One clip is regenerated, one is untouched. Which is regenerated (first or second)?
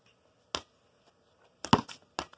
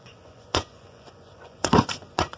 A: second